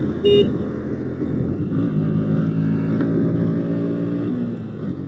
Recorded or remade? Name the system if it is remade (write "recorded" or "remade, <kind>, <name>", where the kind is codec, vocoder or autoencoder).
recorded